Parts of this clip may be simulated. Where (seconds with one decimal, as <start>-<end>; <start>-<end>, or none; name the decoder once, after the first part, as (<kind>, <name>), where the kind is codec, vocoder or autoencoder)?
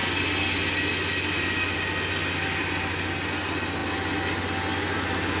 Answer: none